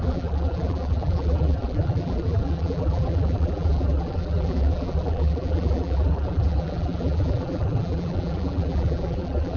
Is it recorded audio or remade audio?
remade